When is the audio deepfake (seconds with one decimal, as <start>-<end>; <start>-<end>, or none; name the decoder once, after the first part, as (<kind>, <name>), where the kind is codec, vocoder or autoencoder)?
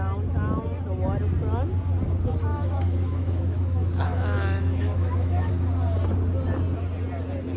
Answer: 2.5-5.5 (autoencoder, DAC-VAE)